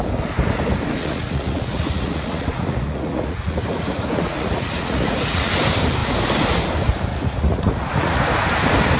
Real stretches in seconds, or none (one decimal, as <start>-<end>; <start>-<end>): 0.0-1.0; 5.5-7.1; 8.2-9.0